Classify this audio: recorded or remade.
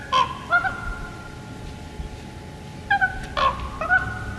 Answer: recorded